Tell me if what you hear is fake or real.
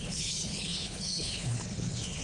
fake